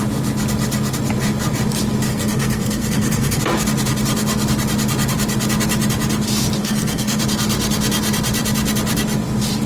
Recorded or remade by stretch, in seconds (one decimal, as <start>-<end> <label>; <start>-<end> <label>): 0.0-2.1 recorded; 2.1-3.4 remade; 3.4-6.6 recorded; 6.6-7.2 remade; 7.2-9.7 recorded